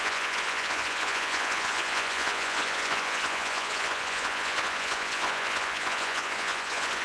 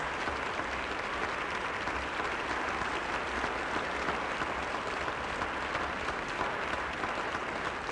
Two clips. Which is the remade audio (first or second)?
first